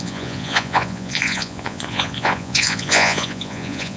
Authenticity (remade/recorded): remade